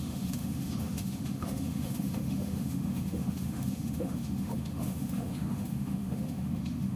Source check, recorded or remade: remade